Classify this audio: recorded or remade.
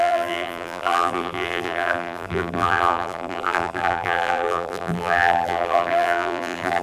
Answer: remade